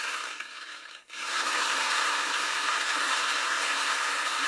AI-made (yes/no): yes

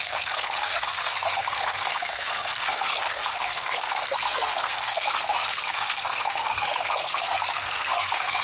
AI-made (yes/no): yes